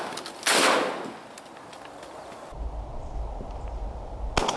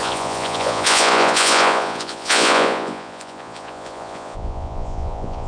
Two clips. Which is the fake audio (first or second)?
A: second